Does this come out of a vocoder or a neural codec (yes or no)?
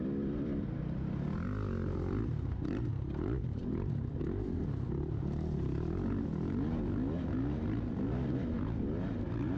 no